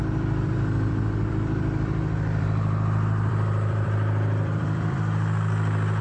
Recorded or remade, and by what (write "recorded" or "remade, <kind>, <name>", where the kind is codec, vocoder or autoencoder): remade, vocoder, BigVGAN v2